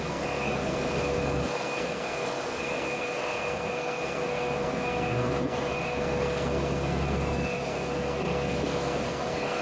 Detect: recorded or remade remade